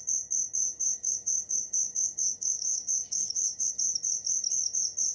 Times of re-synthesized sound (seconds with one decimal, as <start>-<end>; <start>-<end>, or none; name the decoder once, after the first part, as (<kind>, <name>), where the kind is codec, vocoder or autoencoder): 0.6-3.7 (codec, DAC)